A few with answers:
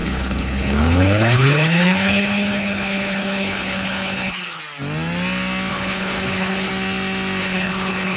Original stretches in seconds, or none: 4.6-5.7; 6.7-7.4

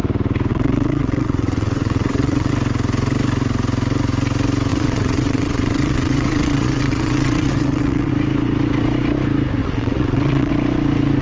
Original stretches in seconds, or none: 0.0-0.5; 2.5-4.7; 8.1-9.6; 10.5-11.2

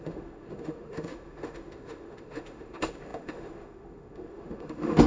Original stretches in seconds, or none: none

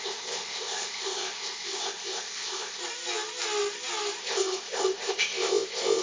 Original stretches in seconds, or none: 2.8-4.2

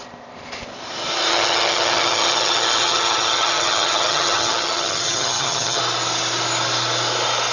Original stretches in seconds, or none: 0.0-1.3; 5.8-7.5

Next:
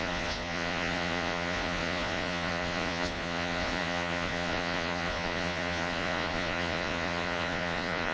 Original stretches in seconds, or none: none

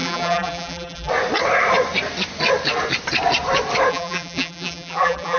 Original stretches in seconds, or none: 1.1-3.9